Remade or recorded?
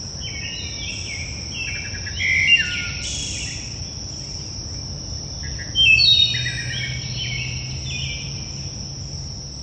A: recorded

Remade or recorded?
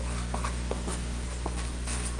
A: remade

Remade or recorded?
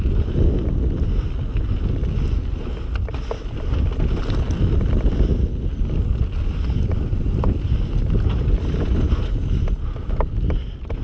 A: recorded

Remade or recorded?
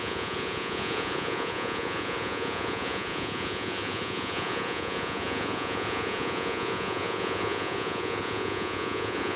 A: remade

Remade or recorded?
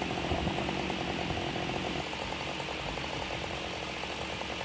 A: recorded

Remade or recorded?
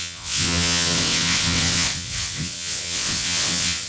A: remade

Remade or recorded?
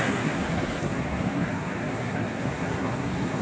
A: remade